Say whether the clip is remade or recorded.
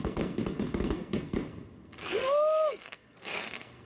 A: remade